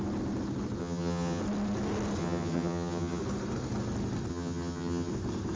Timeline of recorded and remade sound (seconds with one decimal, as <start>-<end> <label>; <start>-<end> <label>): 0.0-0.8 recorded; 0.8-1.4 remade; 1.4-2.2 recorded; 2.2-3.2 remade; 3.2-4.3 recorded; 4.3-5.1 remade; 5.1-5.6 recorded